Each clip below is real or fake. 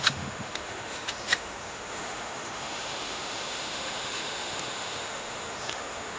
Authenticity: fake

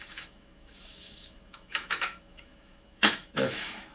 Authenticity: fake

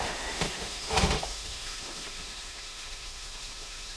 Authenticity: fake